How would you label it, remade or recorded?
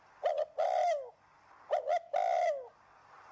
recorded